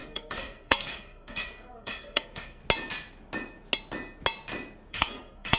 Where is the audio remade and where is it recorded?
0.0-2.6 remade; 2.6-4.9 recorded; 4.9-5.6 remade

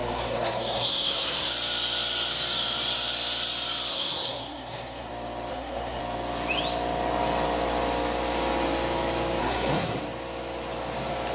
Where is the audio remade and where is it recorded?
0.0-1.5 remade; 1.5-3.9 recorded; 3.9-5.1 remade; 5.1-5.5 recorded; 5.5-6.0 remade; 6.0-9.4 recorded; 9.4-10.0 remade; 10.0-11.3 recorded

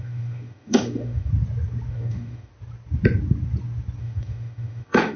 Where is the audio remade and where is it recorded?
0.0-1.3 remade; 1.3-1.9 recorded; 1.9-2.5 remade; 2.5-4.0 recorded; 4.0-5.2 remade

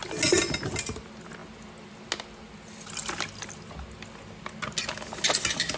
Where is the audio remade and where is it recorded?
0.0-5.8 recorded

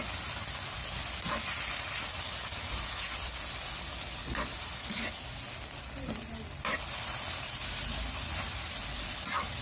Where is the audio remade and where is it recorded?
0.0-9.6 recorded